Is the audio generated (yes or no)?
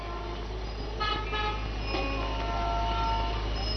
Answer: no